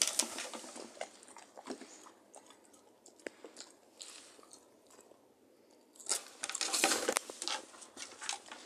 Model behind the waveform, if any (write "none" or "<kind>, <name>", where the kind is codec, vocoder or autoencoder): none